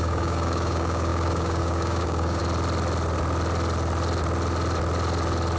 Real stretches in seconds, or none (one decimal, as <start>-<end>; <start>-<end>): 2.4-5.6